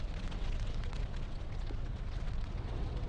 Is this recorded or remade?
remade